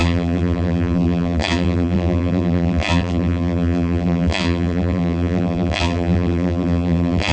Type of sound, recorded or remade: remade